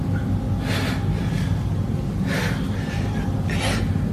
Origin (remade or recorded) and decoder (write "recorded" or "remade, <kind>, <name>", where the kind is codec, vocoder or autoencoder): recorded